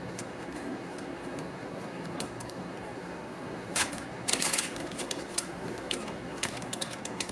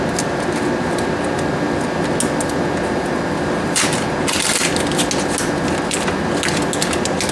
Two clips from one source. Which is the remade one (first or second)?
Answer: first